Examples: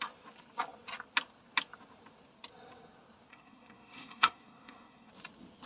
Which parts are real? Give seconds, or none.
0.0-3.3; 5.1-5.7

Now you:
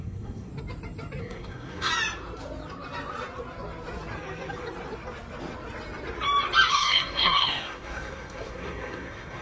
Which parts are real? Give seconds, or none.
0.5-1.2; 1.9-6.7